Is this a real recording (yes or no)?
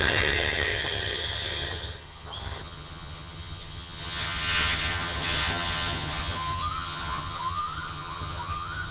no